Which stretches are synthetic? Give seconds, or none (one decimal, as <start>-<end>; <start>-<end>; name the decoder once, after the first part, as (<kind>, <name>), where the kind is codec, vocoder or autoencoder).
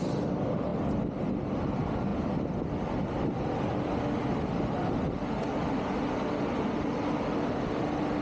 none